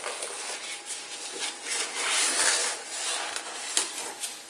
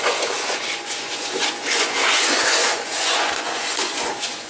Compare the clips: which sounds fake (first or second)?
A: second